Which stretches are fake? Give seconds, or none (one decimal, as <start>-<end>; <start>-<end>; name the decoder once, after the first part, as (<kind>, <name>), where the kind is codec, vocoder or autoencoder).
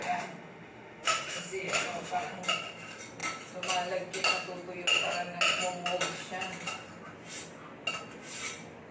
0.0-2.4 (autoencoder, DAC-VAE)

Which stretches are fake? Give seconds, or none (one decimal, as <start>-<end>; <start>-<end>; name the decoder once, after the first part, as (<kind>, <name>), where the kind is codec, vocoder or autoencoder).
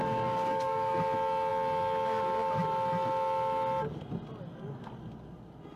0.0-1.0 (codec, DAC)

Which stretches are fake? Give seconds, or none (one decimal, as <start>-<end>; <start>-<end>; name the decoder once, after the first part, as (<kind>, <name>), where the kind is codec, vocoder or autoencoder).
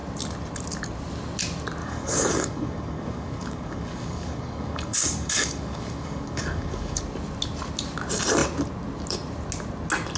1.8-7.0 (codec, DAC)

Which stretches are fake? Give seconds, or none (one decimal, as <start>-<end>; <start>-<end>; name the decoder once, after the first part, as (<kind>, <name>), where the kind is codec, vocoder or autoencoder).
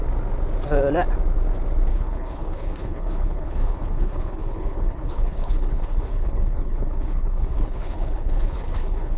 1.9-9.2 (codec, HILCodec)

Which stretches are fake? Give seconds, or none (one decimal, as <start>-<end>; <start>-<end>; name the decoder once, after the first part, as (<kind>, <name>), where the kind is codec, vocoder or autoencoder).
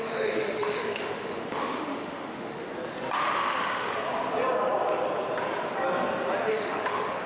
0.0-2.7 (autoencoder, DAC-VAE); 3.2-3.9; 6.5-7.3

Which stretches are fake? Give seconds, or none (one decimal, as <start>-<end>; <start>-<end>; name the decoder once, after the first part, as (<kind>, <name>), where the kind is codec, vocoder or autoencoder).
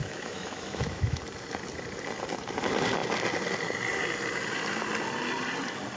0.0-1.2 (autoencoder, DAC-VAE)